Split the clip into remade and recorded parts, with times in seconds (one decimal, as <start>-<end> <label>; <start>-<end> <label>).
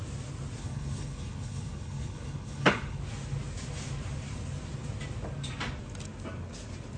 0.0-0.6 recorded; 0.6-3.0 remade; 3.0-7.0 recorded